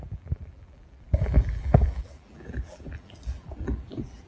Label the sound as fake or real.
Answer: fake